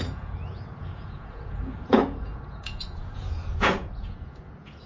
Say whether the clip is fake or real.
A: fake